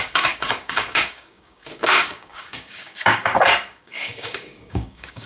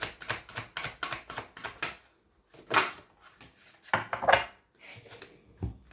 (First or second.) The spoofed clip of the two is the first